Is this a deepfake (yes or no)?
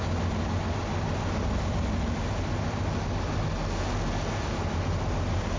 no